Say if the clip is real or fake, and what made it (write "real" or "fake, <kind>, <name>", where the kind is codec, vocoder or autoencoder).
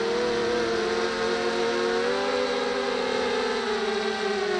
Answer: real